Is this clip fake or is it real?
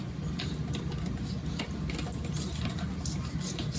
real